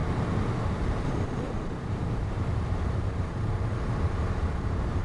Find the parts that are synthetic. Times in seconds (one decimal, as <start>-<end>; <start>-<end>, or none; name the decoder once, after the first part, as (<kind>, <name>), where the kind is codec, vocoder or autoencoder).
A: 0.0-5.0 (vocoder, BigVGAN v2)